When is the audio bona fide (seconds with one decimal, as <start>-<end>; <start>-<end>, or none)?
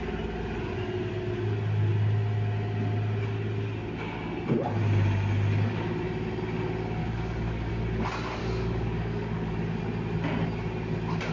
0.0-7.0; 7.7-8.4; 9.8-11.3